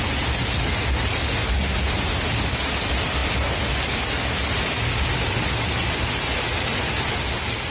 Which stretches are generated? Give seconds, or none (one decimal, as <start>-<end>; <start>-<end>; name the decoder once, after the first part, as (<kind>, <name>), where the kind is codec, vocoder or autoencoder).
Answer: none